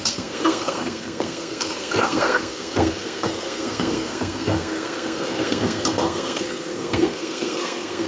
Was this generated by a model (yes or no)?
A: yes